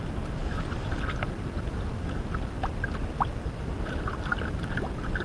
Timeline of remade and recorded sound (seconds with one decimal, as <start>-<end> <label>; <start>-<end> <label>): 0.0-5.2 recorded